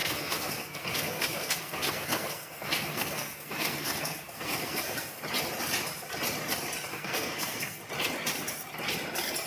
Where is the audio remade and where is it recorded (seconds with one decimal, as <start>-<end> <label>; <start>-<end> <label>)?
0.0-5.2 remade; 5.2-6.9 recorded; 6.9-7.8 remade; 7.8-9.5 recorded